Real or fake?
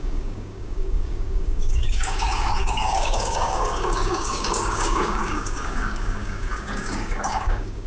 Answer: fake